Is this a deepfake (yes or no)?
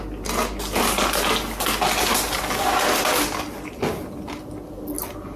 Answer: no